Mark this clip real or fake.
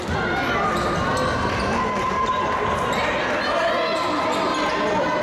real